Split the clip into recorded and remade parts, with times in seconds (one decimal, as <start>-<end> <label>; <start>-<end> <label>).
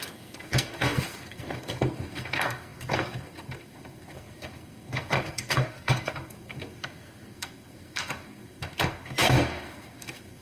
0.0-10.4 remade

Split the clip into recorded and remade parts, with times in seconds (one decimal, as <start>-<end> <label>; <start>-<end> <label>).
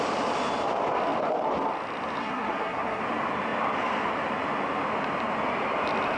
0.0-2.2 recorded; 2.2-3.0 remade; 3.0-6.2 recorded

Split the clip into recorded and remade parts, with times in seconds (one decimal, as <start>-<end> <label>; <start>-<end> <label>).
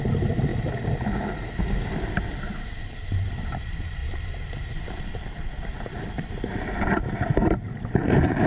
0.0-0.5 remade; 0.5-2.3 recorded; 2.3-4.0 remade; 4.0-5.0 recorded; 5.0-8.5 remade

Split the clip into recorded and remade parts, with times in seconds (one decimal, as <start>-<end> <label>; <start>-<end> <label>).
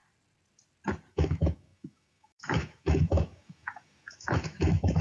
0.0-1.1 recorded; 1.1-5.0 remade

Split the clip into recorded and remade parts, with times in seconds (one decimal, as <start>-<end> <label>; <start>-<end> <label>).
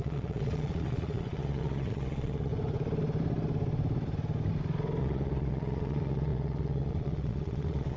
0.0-2.5 remade; 2.5-5.0 recorded; 5.0-8.0 remade